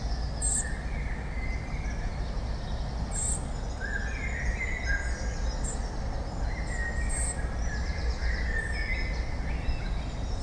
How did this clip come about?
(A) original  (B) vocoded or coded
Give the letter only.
A